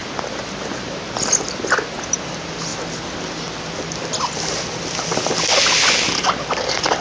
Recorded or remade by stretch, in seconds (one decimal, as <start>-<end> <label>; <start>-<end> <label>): 0.0-2.0 recorded; 2.0-2.7 remade; 2.7-6.5 recorded; 6.5-7.0 remade